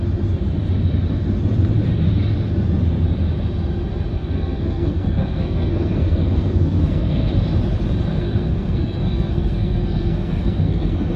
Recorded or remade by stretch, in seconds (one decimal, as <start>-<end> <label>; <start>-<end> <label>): 0.0-4.1 recorded; 4.1-7.3 remade; 7.3-8.1 recorded; 8.1-11.2 remade